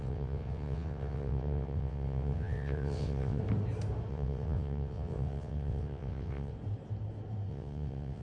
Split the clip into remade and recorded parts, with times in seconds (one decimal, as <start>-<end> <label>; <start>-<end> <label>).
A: 0.0-3.4 remade; 3.4-4.1 recorded; 4.1-6.5 remade; 6.5-7.5 recorded; 7.5-8.2 remade

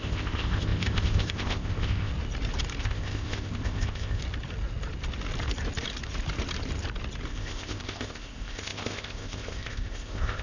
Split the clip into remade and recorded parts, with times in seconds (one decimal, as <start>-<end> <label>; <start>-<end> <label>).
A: 0.0-2.1 remade; 2.1-2.8 recorded; 2.8-4.2 remade; 4.2-7.3 recorded; 7.3-10.4 remade

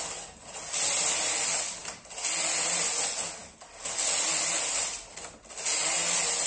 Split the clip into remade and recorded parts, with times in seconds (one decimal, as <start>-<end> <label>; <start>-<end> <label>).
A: 0.0-6.5 recorded

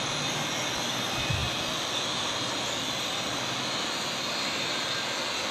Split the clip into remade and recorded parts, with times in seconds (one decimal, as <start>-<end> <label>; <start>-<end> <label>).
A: 0.0-5.5 recorded

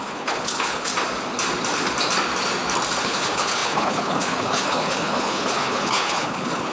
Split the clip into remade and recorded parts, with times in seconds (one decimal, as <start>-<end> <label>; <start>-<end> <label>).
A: 0.0-0.9 remade; 0.9-3.0 recorded; 3.0-6.7 remade

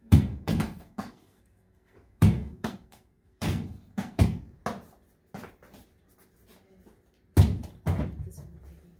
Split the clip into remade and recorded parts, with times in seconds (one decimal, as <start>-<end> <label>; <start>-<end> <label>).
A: 0.0-4.6 remade; 4.6-9.0 recorded